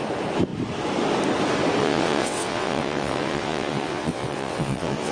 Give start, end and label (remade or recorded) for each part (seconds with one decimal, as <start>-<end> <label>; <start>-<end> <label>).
0.0-1.8 recorded; 1.8-5.1 remade